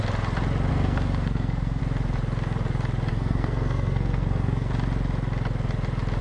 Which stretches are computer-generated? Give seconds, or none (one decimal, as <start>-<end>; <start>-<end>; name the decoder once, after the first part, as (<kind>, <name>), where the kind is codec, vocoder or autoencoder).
0.7-1.8 (codec, SNAC); 3.1-4.7